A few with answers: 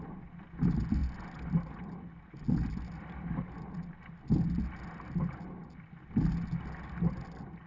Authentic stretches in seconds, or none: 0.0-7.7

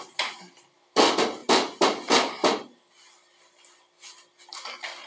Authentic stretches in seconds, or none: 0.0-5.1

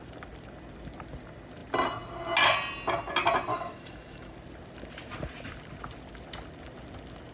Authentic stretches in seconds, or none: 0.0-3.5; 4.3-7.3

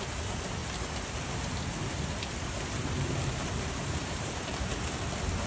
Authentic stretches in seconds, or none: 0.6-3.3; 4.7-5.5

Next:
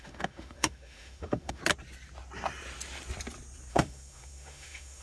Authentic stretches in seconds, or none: 1.6-3.7

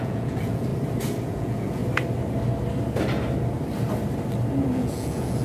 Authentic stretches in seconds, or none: 0.7-1.3; 1.8-4.5

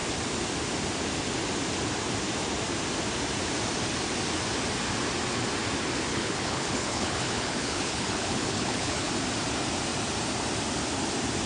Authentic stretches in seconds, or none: 0.0-6.1; 9.1-11.5

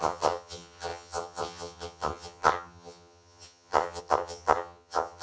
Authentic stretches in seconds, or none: none